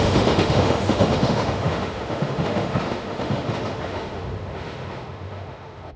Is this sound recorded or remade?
remade